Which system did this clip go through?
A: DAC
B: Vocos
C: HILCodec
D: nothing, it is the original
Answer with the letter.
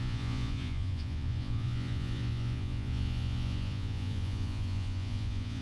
B